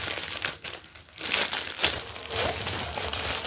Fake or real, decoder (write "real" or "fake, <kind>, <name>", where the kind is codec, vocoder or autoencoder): real